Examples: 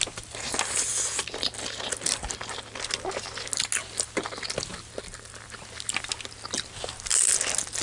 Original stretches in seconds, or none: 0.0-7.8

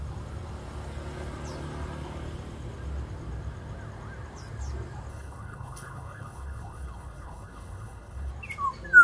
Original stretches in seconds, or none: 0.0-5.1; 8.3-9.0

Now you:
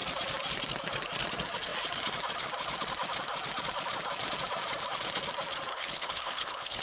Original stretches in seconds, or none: 0.0-5.7

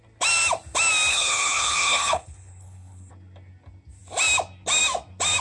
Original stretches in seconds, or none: 0.0-1.1; 3.1-5.4

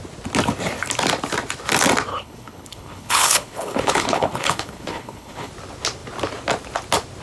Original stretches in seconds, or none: 0.0-2.1; 5.5-7.2

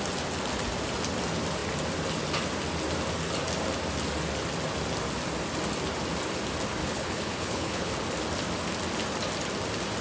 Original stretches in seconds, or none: 0.0-6.8; 7.9-10.0

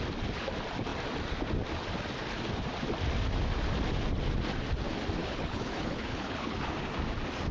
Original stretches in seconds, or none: 0.0-5.2; 6.7-7.5

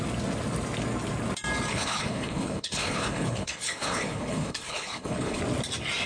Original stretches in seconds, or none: 0.0-1.7; 5.4-6.1